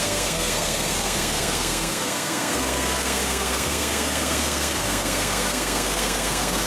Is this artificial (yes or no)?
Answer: yes